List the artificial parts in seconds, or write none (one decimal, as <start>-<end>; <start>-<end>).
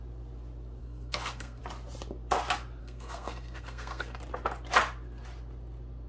0.8-1.6; 2.8-4.2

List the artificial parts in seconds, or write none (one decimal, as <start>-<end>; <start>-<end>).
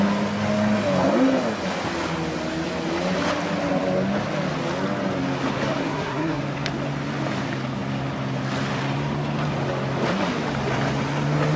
5.8-6.4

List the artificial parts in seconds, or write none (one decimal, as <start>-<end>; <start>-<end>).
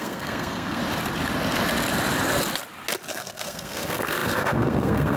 0.0-0.8; 3.1-5.2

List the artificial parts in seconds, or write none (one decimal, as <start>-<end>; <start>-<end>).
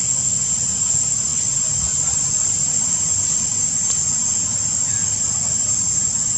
none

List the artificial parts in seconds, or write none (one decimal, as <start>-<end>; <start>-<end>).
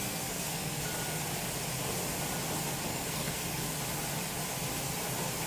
0.0-0.8; 2.9-3.8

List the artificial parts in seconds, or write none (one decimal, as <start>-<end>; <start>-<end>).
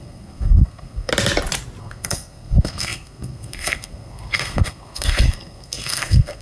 0.0-1.1; 1.8-6.4